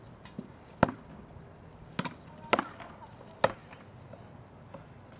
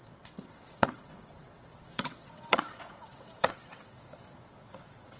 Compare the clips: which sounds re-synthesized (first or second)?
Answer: second